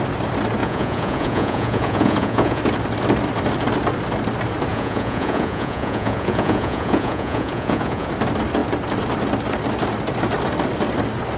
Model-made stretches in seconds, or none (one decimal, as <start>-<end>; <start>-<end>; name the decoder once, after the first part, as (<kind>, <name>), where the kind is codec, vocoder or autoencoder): 0.6-2.6 (vocoder, Vocos); 4.7-8.1